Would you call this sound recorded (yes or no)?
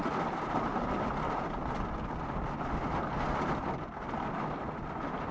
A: yes